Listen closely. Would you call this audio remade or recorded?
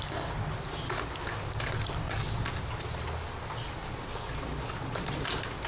recorded